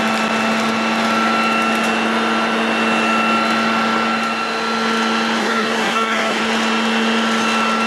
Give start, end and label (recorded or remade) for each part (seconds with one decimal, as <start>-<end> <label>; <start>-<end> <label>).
0.0-5.4 recorded; 5.4-6.4 remade; 6.4-7.9 recorded